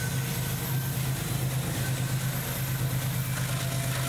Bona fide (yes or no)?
yes